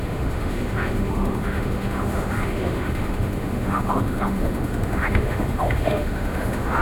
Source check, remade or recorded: remade